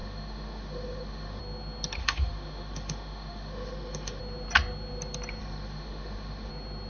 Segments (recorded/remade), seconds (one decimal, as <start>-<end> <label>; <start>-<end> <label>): 0.0-1.4 remade; 1.4-2.0 recorded; 2.0-4.2 remade; 4.2-5.4 recorded; 5.4-6.5 remade; 6.5-6.9 recorded